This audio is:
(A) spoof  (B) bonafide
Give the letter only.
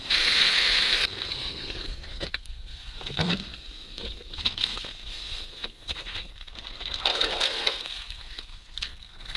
A